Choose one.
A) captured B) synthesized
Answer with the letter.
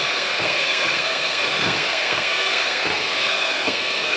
B